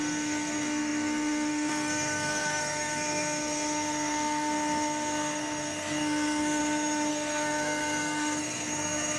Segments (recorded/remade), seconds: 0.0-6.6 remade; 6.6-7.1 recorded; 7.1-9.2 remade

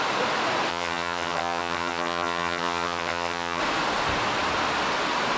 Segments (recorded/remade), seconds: 0.0-0.7 recorded; 0.7-3.6 remade; 3.6-5.4 recorded

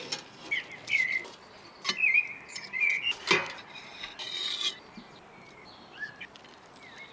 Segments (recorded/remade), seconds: 0.0-2.5 recorded; 2.5-3.0 remade; 3.0-7.1 recorded

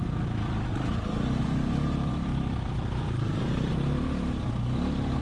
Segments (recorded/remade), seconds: 0.0-2.1 recorded; 2.1-3.7 remade; 3.7-5.2 recorded

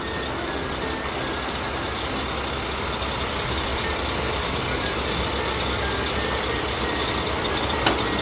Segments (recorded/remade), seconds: 0.0-8.2 recorded